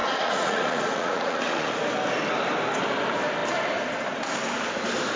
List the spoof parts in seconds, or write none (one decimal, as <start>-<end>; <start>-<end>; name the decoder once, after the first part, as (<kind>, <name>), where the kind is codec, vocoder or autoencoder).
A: 0.0-1.8 (vocoder, Vocos)